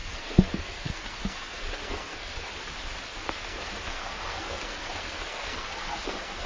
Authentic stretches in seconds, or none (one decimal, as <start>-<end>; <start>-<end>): 2.5-3.1